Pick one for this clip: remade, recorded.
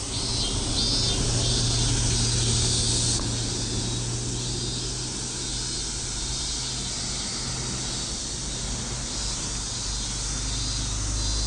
recorded